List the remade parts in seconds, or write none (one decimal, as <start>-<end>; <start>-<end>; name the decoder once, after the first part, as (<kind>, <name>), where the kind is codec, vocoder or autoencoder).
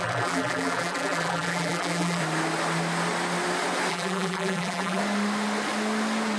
0.0-2.2 (vocoder, BigVGAN v2); 3.9-5.0